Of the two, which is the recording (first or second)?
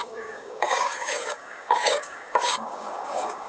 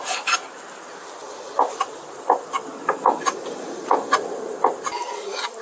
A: second